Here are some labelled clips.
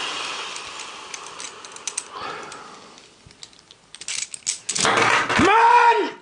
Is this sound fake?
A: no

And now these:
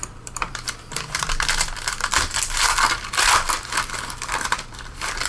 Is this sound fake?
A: yes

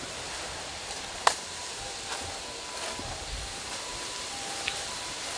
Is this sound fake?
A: yes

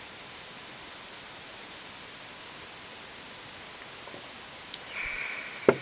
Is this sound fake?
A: yes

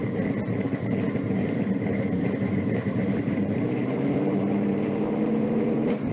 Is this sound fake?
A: yes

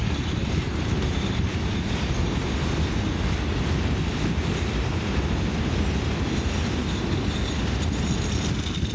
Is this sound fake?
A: no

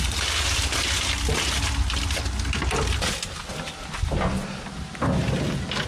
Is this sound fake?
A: no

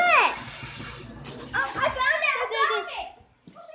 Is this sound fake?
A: no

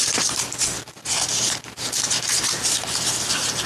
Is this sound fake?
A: yes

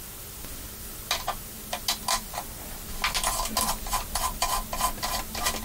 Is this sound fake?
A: no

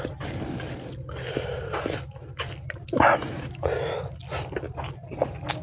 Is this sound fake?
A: no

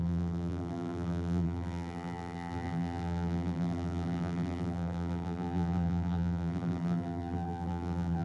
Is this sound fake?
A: yes